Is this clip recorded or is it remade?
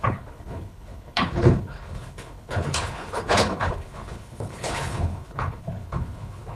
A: remade